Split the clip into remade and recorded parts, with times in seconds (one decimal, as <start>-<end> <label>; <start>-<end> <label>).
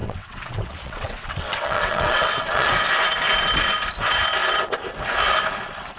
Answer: 0.0-2.7 remade; 2.7-6.0 recorded